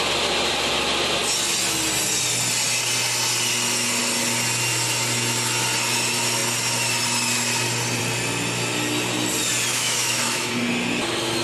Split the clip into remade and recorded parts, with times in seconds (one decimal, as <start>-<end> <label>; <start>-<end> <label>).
0.0-9.7 recorded; 9.7-10.5 remade; 10.5-11.4 recorded